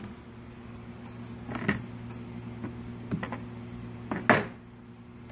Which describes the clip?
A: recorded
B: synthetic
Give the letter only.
A